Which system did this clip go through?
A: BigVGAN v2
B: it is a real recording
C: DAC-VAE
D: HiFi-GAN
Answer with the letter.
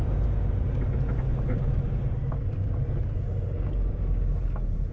B